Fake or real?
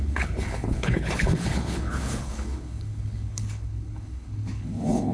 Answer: fake